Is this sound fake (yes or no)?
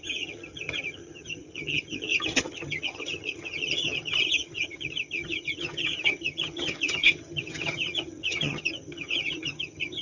yes